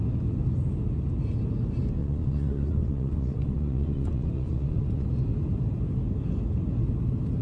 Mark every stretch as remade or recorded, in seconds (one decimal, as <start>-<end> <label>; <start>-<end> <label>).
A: 0.0-2.0 recorded; 2.0-5.1 remade; 5.1-7.4 recorded